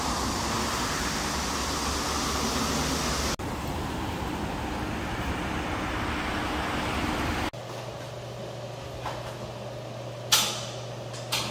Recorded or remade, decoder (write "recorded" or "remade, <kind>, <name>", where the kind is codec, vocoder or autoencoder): recorded